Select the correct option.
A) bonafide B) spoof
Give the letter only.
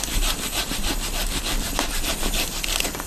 B